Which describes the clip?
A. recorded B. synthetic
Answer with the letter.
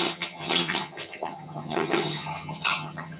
B